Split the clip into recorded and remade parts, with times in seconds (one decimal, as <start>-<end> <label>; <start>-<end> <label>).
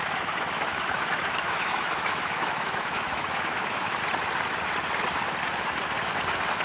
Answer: 0.0-4.0 remade; 4.0-6.6 recorded